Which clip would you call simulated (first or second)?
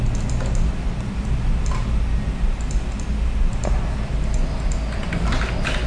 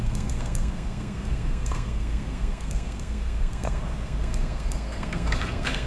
second